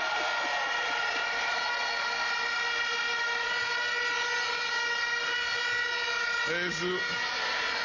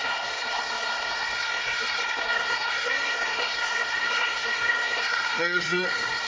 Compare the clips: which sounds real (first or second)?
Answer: first